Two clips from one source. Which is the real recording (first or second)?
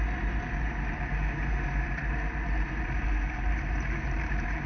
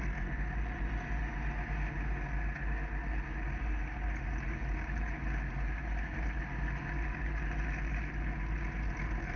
second